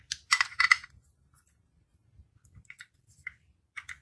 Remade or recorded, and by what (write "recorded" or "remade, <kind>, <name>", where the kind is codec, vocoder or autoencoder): recorded